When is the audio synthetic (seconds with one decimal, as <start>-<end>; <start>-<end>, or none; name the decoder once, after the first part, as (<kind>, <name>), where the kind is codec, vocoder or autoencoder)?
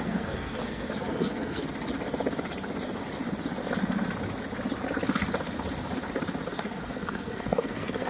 0.0-1.6 (codec, SNAC); 6.5-8.1